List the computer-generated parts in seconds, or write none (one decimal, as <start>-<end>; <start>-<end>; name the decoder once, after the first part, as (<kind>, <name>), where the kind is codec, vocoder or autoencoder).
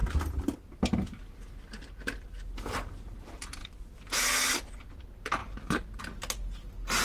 5.4-6.0 (vocoder, BigVGAN v2)